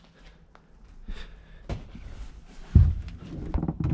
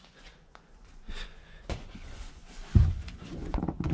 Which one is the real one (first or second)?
first